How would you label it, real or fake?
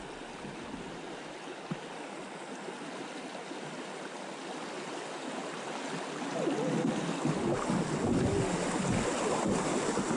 real